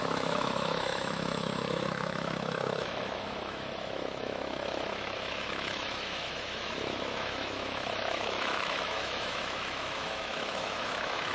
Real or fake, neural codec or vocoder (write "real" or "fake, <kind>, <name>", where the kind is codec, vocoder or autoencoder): fake, autoencoder, DAC-VAE